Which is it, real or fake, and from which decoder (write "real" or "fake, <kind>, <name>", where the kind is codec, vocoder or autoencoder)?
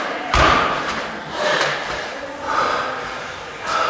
fake, vocoder, BigVGAN v2